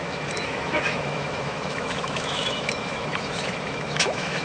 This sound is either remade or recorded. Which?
remade